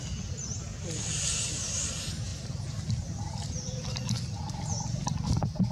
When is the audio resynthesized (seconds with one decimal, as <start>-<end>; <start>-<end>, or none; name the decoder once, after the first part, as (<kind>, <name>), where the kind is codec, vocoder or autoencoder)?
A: 0.7-1.3 (vocoder, BigVGAN v2); 2.3-4.1